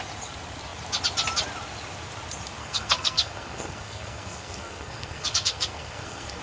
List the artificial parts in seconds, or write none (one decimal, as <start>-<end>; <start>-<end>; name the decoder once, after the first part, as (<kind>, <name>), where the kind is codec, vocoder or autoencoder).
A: 2.6-6.4 (codec, SNAC)